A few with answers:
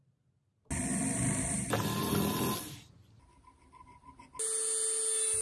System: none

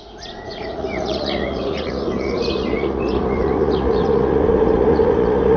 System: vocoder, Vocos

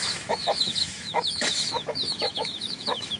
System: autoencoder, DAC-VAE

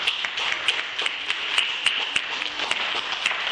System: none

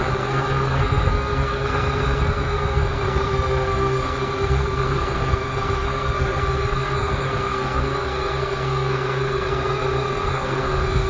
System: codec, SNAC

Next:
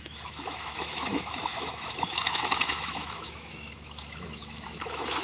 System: autoencoder, DAC-VAE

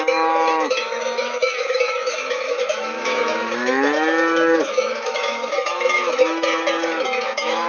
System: autoencoder, DAC-VAE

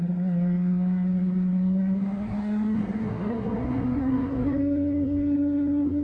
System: codec, SNAC